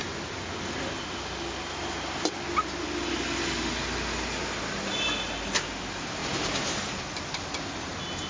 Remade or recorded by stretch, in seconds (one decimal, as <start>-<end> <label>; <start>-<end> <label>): 0.0-8.3 recorded